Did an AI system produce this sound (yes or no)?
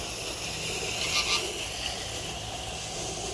no